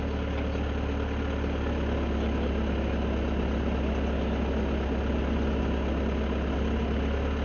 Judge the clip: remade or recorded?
recorded